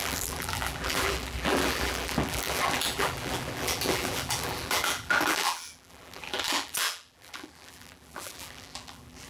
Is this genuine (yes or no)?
no